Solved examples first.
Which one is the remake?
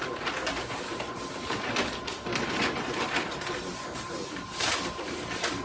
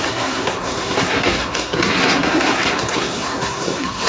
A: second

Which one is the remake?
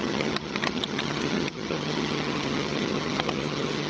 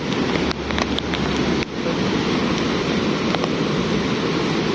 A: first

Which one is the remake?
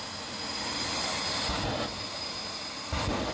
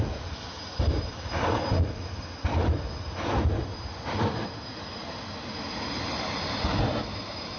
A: second